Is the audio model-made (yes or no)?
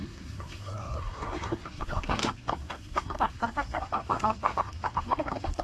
yes